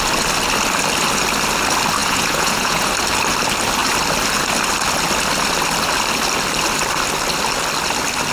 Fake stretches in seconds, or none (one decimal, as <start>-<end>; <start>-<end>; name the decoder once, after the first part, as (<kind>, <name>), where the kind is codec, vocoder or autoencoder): 2.0-2.9 (vocoder, Vocos)